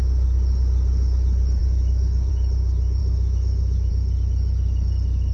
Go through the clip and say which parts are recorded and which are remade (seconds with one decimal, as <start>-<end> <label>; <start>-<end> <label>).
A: 0.0-1.6 recorded; 1.6-2.3 remade; 2.3-3.0 recorded; 3.0-3.9 remade; 3.9-5.3 recorded